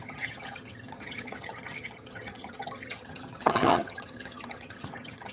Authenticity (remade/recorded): remade